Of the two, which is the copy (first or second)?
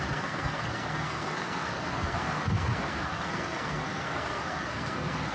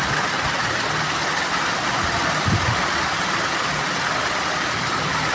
first